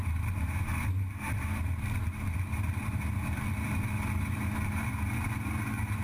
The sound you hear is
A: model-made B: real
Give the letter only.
A